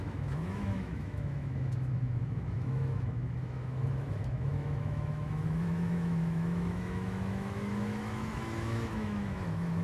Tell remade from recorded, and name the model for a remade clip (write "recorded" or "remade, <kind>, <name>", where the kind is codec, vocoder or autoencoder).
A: remade, autoencoder, DAC-VAE